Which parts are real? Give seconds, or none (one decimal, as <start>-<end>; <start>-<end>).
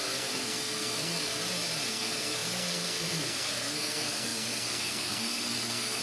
1.4-1.9